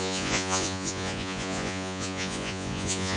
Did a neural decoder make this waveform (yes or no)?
yes